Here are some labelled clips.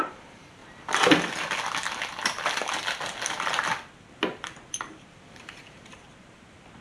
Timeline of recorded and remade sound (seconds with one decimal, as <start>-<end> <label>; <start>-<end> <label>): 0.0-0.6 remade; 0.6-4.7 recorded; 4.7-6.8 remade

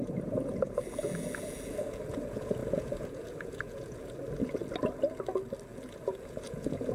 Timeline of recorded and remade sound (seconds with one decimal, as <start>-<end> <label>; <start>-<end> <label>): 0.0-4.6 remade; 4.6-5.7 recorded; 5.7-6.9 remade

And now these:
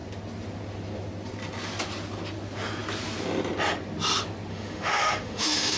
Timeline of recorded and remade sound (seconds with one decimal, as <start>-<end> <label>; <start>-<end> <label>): 0.0-4.5 recorded; 4.5-5.8 remade

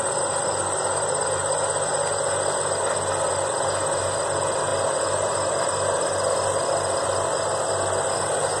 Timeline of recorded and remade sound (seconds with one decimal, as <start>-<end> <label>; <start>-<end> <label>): 0.0-8.6 recorded

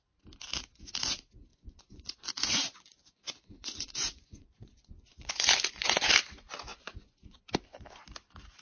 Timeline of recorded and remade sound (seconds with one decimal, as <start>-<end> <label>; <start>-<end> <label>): 0.0-1.5 recorded; 1.5-6.1 remade; 6.1-6.7 recorded; 6.7-7.5 remade; 7.5-8.6 recorded

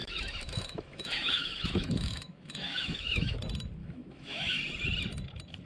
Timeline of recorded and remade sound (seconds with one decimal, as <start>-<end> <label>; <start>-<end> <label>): 0.0-3.4 remade; 3.4-3.8 recorded; 3.8-4.6 remade; 4.6-5.7 recorded

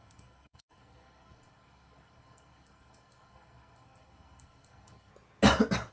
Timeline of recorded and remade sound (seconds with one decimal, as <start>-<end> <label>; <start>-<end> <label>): 0.0-5.1 remade; 5.1-5.9 recorded